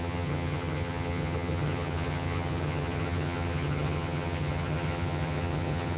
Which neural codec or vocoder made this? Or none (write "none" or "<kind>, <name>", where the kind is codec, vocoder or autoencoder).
vocoder, HiFi-GAN